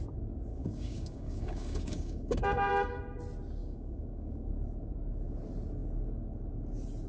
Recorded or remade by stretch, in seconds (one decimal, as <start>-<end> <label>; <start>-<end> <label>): 0.0-0.5 recorded; 0.5-2.7 remade; 2.7-3.6 recorded; 3.6-4.5 remade; 4.5-7.1 recorded